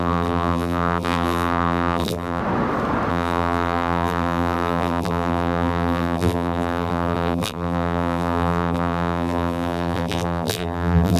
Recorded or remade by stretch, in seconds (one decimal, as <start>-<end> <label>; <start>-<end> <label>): 0.0-2.4 remade; 2.4-3.1 recorded; 3.1-11.2 remade